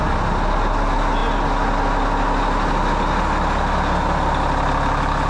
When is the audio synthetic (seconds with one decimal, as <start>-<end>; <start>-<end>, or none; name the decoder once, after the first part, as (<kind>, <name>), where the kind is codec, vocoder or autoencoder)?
none